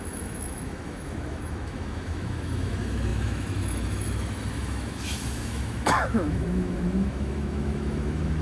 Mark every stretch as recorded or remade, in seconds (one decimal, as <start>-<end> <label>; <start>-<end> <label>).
0.0-8.4 remade

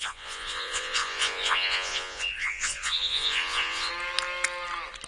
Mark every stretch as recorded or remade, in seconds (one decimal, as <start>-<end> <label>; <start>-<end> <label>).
0.0-3.9 remade; 3.9-5.1 recorded

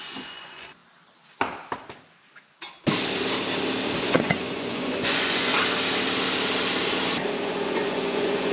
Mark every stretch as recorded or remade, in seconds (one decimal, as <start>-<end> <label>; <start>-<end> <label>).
0.0-0.8 remade; 0.8-4.0 recorded; 4.0-5.5 remade; 5.5-7.4 recorded; 7.4-8.5 remade